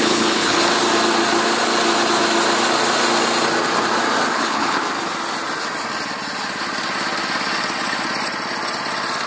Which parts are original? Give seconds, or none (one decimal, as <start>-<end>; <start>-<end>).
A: 0.6-4.3; 4.8-9.3